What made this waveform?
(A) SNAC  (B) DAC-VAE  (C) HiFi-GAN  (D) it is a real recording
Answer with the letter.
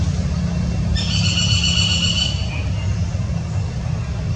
D